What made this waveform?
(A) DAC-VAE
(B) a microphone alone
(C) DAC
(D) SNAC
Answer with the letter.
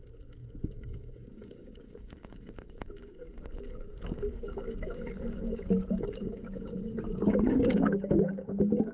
C